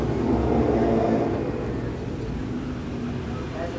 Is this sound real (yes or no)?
yes